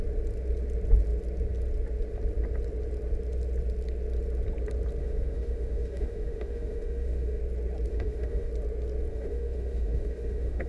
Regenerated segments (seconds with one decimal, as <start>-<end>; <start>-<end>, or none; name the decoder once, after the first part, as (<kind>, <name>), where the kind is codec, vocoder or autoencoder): 5.0-7.4 (autoencoder, DAC-VAE); 7.9-8.5; 9.1-10.7